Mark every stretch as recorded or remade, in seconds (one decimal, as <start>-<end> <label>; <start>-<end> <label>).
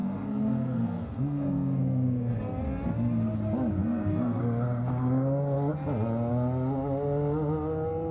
0.0-2.3 remade; 2.3-3.8 recorded; 3.8-4.4 remade; 4.4-8.1 recorded